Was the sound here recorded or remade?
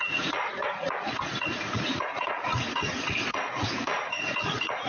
remade